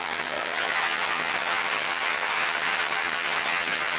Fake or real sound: fake